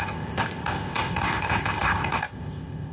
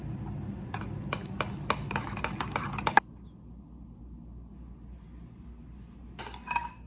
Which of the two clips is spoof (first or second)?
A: first